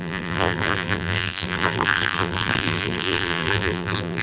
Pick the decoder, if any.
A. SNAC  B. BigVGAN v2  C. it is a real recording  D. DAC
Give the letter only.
B